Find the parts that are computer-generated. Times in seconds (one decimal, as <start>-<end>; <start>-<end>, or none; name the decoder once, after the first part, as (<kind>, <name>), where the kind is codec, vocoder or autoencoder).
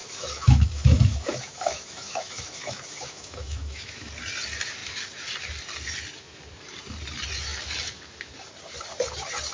0.0-4.1 (autoencoder, DAC-VAE)